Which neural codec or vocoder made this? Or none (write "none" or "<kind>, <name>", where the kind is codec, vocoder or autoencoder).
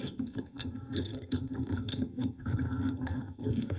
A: codec, SNAC